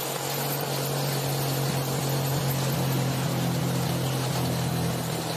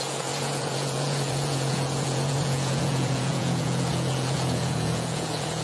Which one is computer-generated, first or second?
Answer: second